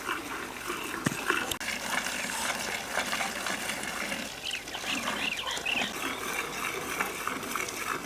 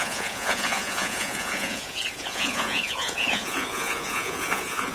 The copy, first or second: second